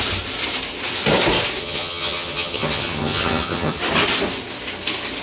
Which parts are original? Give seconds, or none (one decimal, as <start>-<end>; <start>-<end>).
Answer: 0.0-1.6; 3.8-5.2